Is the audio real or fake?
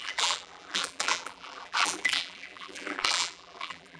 fake